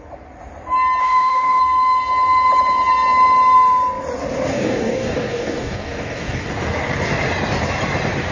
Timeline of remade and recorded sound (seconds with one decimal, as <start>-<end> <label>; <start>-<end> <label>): 0.0-1.0 recorded; 1.0-1.6 remade; 1.6-4.5 recorded; 4.5-6.5 remade; 6.5-8.3 recorded